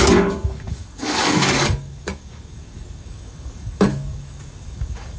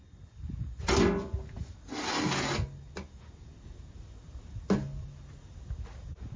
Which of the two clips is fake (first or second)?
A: first